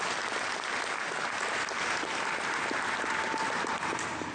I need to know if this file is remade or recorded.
recorded